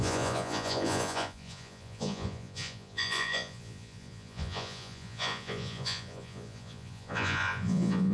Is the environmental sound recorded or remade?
remade